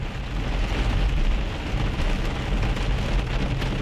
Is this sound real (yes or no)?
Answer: yes